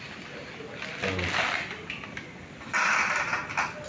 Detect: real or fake real